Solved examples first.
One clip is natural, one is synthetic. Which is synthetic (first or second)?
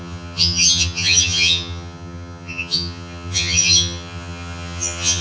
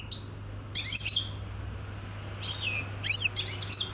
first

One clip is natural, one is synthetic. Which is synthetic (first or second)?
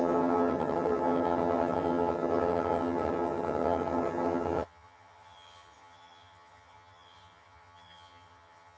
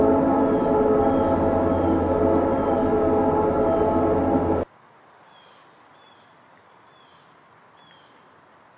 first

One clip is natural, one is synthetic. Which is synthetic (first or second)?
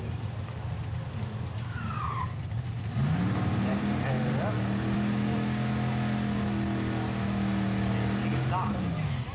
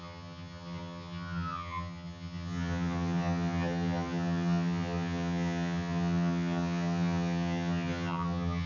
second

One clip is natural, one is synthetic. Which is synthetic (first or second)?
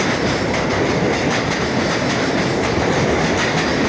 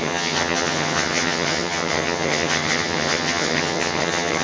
second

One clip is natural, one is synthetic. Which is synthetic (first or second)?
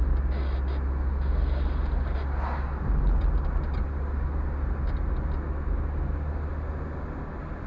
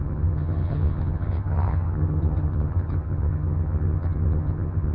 second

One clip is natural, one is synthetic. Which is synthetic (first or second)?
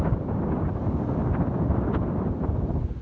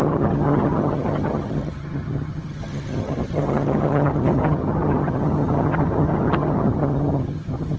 second